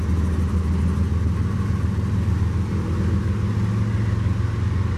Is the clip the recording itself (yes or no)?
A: yes